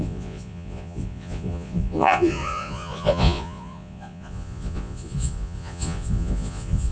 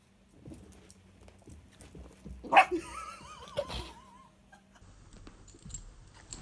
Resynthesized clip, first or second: first